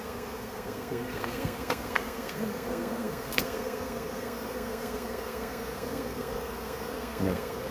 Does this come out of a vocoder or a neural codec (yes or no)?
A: yes